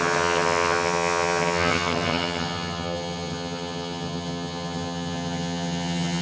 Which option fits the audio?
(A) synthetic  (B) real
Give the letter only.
A